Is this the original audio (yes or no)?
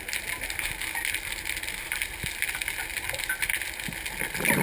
yes